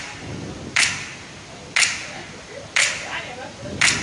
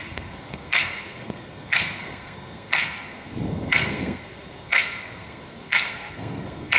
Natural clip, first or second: first